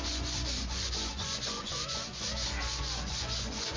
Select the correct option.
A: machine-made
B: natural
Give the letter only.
A